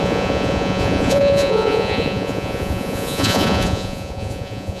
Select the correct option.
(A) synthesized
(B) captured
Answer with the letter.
A